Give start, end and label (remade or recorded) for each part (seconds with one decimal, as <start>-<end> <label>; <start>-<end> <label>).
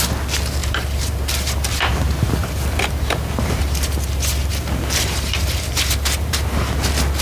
0.0-0.6 recorded; 0.6-1.9 remade; 1.9-2.4 recorded; 2.4-6.7 remade; 6.7-7.2 recorded